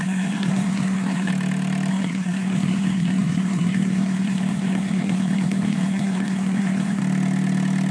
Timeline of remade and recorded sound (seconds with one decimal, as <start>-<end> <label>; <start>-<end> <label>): 0.0-1.3 remade; 1.3-1.9 recorded; 1.9-7.0 remade; 7.0-7.9 recorded